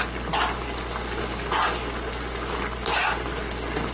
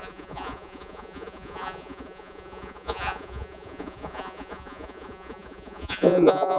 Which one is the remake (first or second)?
second